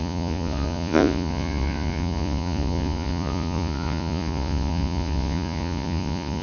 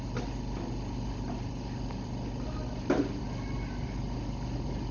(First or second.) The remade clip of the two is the first